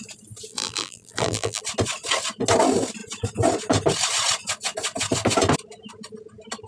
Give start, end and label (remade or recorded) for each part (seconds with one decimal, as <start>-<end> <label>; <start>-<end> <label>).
0.0-0.5 recorded; 0.5-1.6 remade; 1.6-6.7 recorded